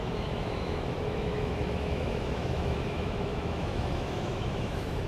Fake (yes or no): yes